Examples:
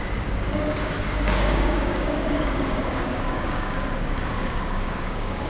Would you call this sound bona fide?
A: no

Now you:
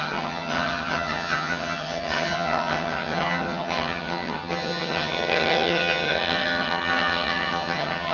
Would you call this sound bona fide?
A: no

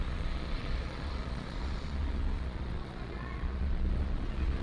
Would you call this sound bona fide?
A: no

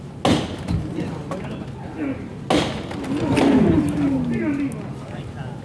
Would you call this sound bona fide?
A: yes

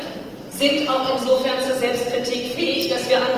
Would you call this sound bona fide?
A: yes